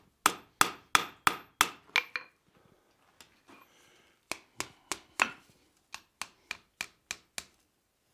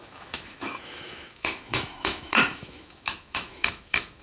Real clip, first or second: first